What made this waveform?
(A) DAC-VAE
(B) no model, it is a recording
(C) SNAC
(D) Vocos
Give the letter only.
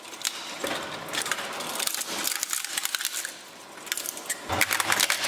B